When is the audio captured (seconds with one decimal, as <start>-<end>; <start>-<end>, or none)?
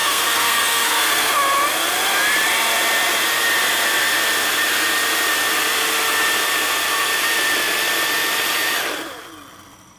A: 1.3-10.0